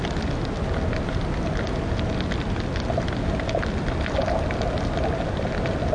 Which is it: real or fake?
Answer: real